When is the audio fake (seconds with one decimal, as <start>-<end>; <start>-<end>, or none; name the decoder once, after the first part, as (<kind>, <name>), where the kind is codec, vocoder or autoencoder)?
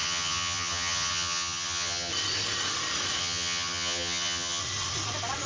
0.0-2.1 (vocoder, HiFi-GAN); 3.2-4.6